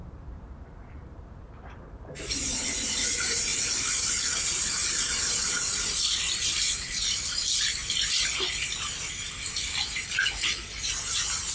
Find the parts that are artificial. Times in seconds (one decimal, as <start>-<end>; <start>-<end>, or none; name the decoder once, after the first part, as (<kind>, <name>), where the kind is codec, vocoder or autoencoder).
0.0-7.8 (vocoder, BigVGAN v2); 10.7-11.5